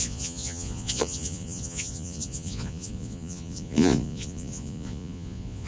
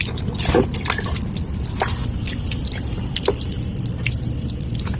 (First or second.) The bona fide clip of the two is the second